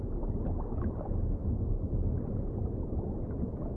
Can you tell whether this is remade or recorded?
recorded